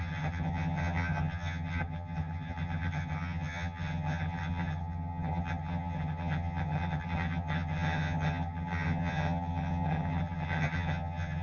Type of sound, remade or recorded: remade